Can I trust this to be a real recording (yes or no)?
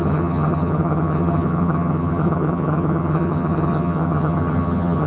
no